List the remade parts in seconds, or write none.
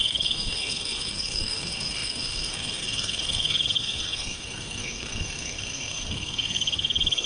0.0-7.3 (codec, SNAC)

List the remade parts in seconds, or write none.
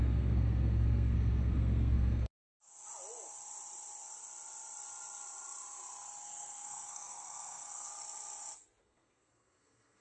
0.0-2.7 (codec, SNAC); 6.2-7.9; 8.8-10.0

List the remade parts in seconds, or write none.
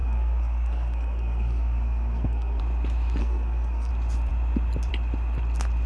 0.0-2.6 (codec, SNAC); 3.2-3.9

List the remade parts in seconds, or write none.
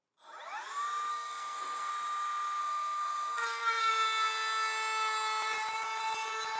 1.1-1.9 (codec, SNAC); 2.6-3.9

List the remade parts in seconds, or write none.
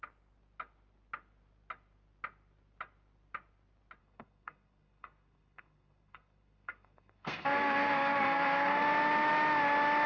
4.0-8.8 (codec, SNAC)